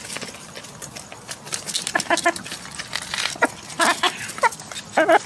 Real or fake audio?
real